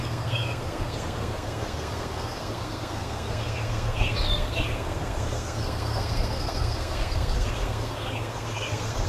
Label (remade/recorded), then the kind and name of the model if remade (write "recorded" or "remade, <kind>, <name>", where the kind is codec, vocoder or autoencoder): remade, codec, SNAC